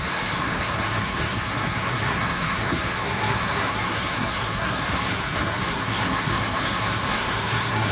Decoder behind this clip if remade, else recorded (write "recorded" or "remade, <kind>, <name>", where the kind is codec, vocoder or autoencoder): remade, codec, SNAC